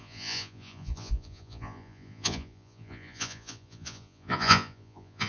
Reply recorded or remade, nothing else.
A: remade